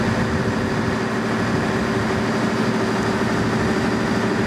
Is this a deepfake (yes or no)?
no